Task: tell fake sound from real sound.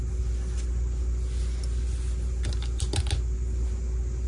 real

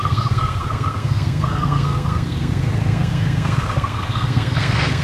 fake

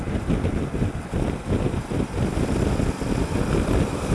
real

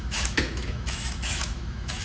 fake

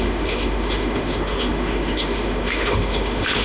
fake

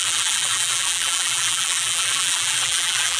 fake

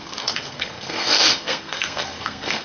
fake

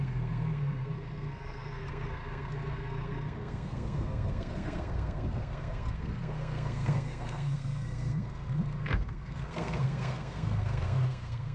fake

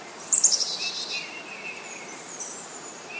fake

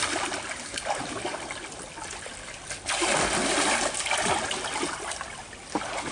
real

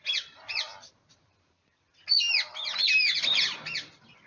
real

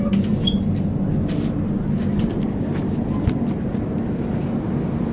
real